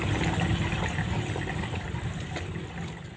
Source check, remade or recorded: recorded